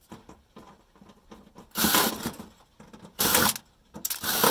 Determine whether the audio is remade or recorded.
recorded